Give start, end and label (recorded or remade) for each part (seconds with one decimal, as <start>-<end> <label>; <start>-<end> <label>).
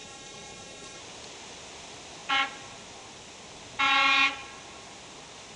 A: 0.0-1.0 remade; 1.0-5.6 recorded